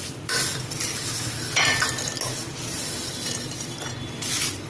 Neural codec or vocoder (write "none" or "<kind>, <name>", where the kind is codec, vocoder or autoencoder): none